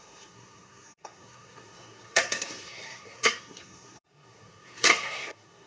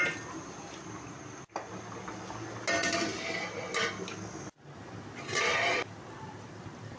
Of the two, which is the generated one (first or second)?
first